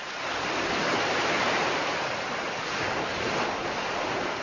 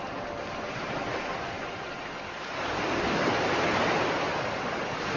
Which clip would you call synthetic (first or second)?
first